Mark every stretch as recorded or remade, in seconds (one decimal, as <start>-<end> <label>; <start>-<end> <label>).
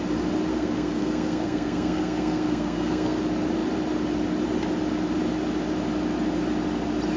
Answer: 0.0-0.5 recorded; 0.5-3.2 remade; 3.2-7.2 recorded